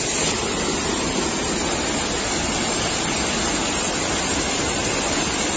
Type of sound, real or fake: real